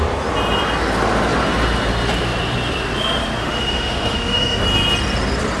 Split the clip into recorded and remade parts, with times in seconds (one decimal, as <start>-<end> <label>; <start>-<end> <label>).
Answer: 0.0-3.4 recorded; 3.4-4.6 remade; 4.6-5.6 recorded